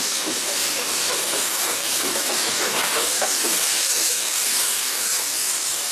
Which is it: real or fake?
fake